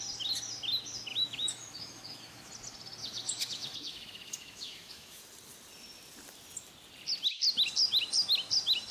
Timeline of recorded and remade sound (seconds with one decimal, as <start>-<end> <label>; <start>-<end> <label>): 0.0-1.1 recorded; 1.1-2.5 remade; 2.5-3.0 recorded; 3.0-5.2 remade; 5.2-8.9 recorded